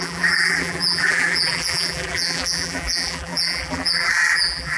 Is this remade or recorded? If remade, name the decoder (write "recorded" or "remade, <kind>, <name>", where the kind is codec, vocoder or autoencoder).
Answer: remade, vocoder, BigVGAN v2